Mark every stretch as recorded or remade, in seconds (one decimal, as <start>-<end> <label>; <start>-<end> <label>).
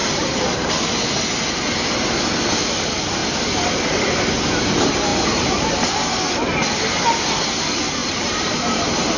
0.0-0.7 remade; 0.7-5.1 recorded; 5.1-5.9 remade; 5.9-8.0 recorded; 8.0-8.5 remade; 8.5-9.2 recorded